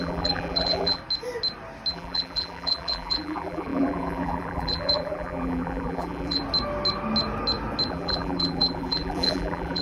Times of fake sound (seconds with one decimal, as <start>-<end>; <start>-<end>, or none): 0.0-1.0; 1.9-6.4; 7.9-9.8